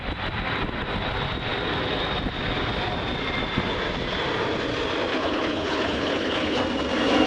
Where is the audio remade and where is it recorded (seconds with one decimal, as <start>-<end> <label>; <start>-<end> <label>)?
0.0-5.1 recorded; 5.1-6.6 remade; 6.6-7.3 recorded